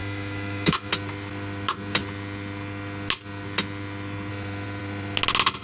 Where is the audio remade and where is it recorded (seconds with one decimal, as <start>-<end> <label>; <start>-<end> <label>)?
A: 0.0-0.9 remade; 0.9-5.6 recorded